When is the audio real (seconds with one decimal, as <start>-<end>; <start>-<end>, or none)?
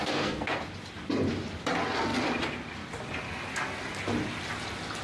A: 0.6-5.0